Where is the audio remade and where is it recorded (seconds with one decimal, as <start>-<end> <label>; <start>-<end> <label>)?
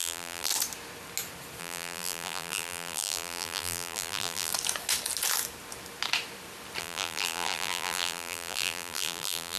0.0-0.5 remade; 0.5-1.6 recorded; 1.6-4.5 remade; 4.5-6.8 recorded; 6.8-9.6 remade